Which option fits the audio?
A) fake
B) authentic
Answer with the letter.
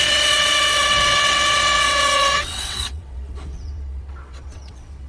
A